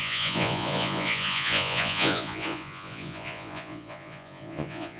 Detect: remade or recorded remade